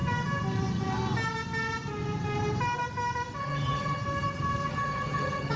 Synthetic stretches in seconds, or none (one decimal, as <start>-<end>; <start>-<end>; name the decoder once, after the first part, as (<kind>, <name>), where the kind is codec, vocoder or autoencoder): 3.4-4.0 (vocoder, HiFi-GAN); 4.7-5.6